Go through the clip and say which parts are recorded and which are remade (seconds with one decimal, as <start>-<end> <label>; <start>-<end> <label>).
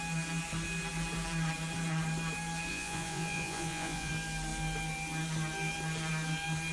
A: 0.0-2.7 recorded; 2.7-4.1 remade; 4.1-6.7 recorded